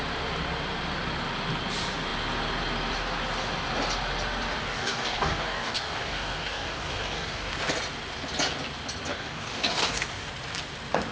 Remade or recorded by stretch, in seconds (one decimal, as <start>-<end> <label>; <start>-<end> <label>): 0.0-4.6 recorded; 4.6-7.5 remade; 7.5-9.1 recorded; 9.1-10.3 remade; 10.3-11.1 recorded